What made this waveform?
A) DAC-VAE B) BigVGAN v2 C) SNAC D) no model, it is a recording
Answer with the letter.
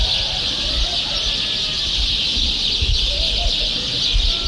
D